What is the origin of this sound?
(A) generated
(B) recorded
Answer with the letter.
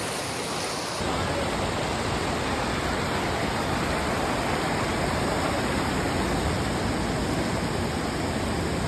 B